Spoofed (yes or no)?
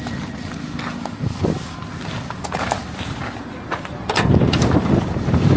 no